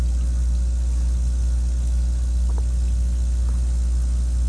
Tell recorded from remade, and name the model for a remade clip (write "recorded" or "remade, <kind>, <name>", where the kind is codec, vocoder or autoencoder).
recorded